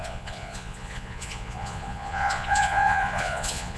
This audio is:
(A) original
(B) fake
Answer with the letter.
B